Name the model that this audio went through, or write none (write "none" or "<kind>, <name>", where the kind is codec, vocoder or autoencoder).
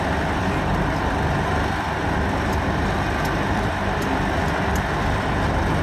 none